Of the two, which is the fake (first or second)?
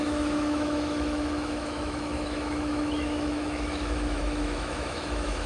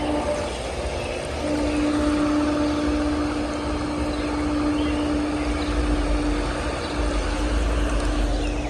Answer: first